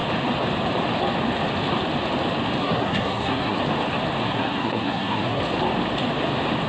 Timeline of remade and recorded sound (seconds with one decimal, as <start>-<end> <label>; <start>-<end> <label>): 0.0-2.6 recorded; 2.6-3.6 remade; 3.6-4.2 recorded; 4.2-5.4 remade; 5.4-6.7 recorded